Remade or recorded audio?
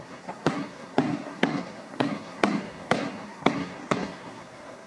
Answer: remade